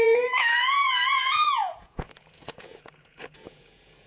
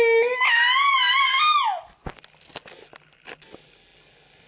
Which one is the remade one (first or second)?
first